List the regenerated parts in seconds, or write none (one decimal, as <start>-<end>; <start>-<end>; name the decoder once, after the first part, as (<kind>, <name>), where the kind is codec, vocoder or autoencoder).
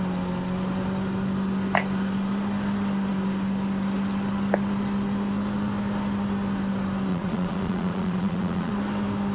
7.1-8.7 (vocoder, Vocos)